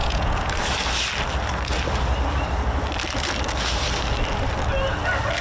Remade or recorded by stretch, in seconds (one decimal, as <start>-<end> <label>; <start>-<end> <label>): 0.0-0.5 remade; 0.5-5.4 recorded